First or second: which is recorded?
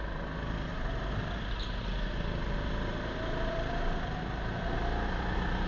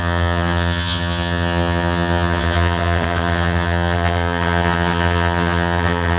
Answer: first